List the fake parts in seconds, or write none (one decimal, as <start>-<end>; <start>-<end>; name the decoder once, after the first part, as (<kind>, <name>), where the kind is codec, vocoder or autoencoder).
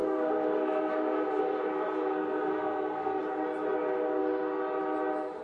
0.0-3.2 (codec, SNAC)